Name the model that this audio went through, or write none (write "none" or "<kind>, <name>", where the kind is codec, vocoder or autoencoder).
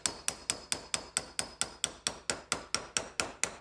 none